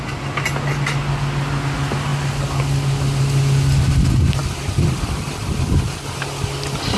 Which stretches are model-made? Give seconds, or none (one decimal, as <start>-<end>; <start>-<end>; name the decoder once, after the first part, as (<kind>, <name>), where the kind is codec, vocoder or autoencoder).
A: none